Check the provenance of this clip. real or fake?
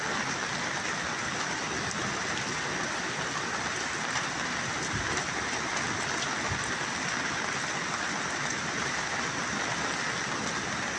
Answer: real